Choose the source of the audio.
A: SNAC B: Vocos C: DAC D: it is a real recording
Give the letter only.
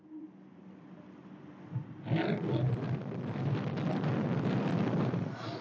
D